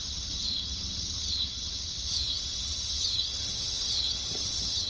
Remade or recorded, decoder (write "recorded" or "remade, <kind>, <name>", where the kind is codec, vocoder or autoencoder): remade, vocoder, HiFi-GAN